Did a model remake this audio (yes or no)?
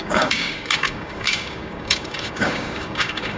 yes